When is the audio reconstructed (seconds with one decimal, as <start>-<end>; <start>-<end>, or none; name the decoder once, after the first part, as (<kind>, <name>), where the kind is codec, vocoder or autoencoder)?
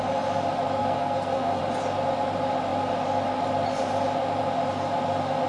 0.8-1.6 (codec, SNAC)